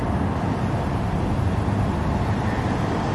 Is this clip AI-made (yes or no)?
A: no